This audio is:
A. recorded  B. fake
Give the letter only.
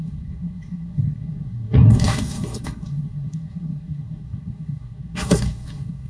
B